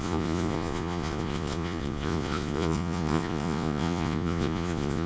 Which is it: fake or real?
fake